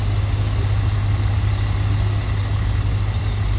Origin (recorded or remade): recorded